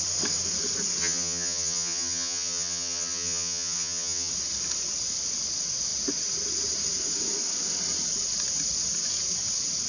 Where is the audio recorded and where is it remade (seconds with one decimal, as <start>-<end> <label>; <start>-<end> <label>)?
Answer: 0.0-1.0 recorded; 1.0-4.3 remade; 4.3-9.9 recorded